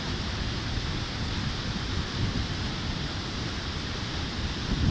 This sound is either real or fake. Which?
real